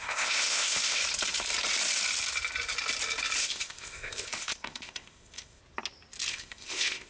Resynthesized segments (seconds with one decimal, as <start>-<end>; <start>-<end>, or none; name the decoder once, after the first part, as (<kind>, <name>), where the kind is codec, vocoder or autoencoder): 0.0-1.0 (codec, ZipCodec); 3.4-5.6; 6.3-7.1